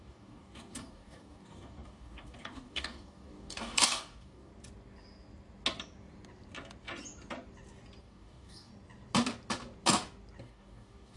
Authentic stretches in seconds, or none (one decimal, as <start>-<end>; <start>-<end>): 4.5-8.0; 8.7-10.4